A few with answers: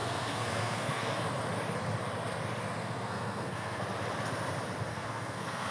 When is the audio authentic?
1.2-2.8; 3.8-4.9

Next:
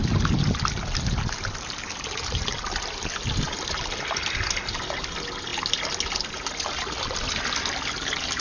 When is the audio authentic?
0.0-8.4